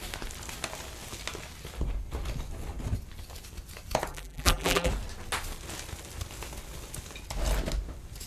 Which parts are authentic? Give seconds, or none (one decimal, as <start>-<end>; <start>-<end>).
0.0-4.1; 4.9-8.3